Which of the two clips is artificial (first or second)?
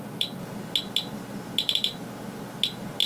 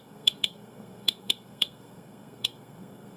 second